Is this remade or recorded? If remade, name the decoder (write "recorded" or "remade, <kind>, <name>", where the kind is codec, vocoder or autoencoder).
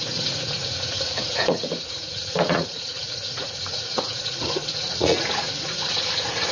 remade, vocoder, Vocos